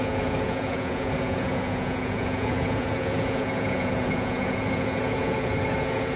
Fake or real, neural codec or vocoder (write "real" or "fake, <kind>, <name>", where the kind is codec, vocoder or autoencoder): fake, vocoder, Vocos